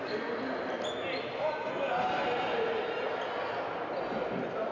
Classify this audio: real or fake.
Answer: real